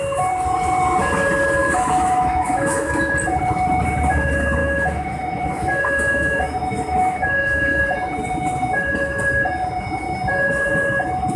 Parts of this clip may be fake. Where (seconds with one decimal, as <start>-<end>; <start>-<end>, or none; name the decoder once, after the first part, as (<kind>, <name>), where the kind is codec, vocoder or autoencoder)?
1.6-3.1 (autoencoder, DAC-VAE); 4.6-7.8